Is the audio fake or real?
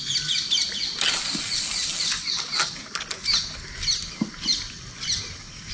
real